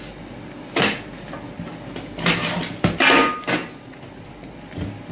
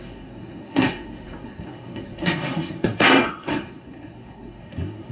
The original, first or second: first